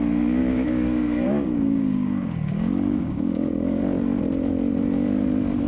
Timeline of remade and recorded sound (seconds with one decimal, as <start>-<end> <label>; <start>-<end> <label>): 0.0-0.4 recorded; 0.4-3.8 remade; 3.8-5.7 recorded